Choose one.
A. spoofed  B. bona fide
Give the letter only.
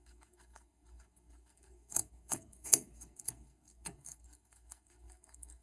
A